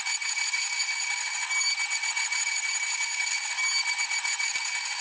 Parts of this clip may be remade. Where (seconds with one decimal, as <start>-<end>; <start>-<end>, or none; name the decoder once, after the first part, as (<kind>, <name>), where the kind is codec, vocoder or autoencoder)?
none